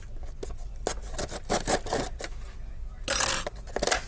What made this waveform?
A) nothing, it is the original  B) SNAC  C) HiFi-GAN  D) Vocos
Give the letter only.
A